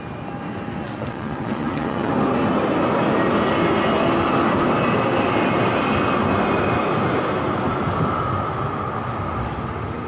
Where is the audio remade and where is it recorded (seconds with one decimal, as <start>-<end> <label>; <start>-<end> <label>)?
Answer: 0.0-0.8 recorded; 0.8-2.1 remade; 2.1-10.1 recorded